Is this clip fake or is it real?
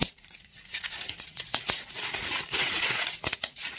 fake